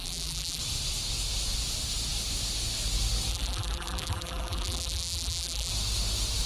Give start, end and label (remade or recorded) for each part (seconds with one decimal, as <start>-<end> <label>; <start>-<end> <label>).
0.0-0.6 remade; 0.6-3.3 recorded; 3.3-5.7 remade; 5.7-6.5 recorded